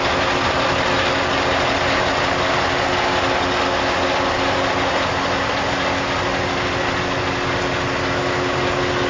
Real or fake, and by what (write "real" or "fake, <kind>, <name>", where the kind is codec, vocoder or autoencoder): real